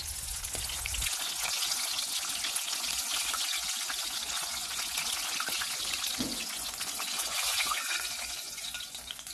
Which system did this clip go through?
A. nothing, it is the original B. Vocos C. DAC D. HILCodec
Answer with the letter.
B